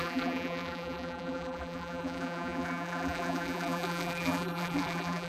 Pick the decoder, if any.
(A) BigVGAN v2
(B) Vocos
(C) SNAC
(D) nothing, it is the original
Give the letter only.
A